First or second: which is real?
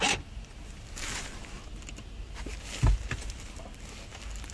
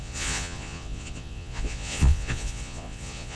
first